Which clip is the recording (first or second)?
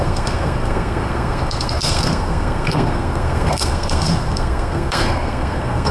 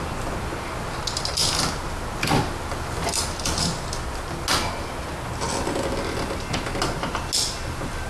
second